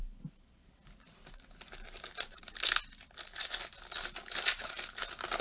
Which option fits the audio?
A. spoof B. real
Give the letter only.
B